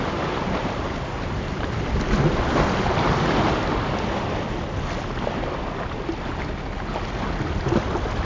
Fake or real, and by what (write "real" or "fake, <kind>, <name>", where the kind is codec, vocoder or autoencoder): real